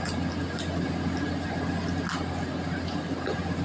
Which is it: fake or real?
real